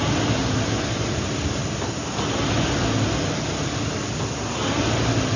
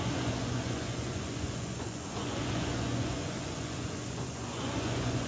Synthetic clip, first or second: second